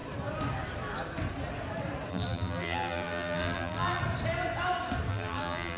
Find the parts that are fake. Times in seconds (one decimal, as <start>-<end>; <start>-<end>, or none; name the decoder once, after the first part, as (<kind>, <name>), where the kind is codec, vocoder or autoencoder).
2.1-4.0 (vocoder, BigVGAN v2); 5.1-5.8